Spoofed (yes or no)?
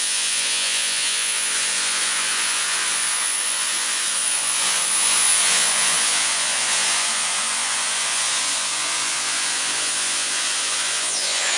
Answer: yes